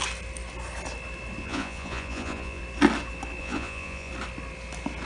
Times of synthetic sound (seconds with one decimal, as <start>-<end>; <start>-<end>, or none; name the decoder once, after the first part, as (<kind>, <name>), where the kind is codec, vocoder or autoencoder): 1.4-2.6 (vocoder, Vocos); 3.4-4.1